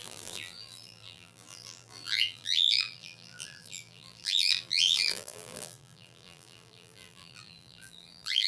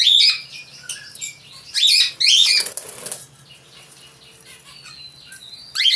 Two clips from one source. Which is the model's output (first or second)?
first